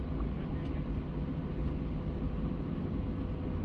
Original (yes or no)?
yes